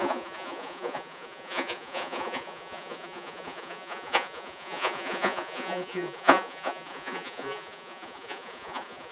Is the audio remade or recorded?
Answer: remade